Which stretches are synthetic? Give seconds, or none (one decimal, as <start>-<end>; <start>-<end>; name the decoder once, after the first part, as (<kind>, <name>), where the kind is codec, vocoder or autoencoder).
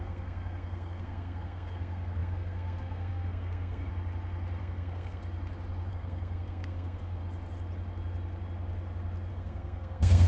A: 0.0-3.9 (codec, SNAC); 4.6-5.2; 5.9-7.2; 9.3-10.3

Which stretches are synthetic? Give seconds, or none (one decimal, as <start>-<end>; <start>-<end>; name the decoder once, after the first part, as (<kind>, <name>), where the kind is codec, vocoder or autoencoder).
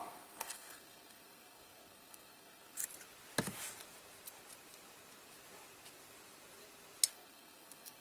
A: 0.0-2.8 (codec, SNAC); 7.1-8.0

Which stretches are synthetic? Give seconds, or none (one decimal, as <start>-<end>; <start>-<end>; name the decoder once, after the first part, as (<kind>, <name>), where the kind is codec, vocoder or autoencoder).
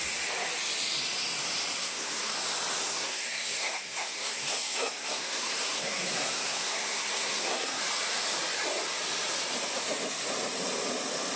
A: 1.8-2.3 (codec, SNAC); 2.8-7.8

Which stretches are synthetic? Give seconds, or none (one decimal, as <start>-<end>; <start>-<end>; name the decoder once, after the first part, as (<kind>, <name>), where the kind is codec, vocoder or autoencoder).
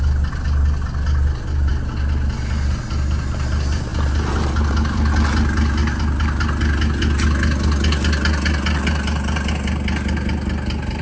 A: none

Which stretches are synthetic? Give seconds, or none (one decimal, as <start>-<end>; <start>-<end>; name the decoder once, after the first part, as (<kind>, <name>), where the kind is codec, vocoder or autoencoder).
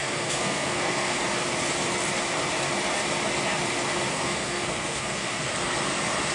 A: 0.0-1.2 (codec, SNAC); 4.1-5.5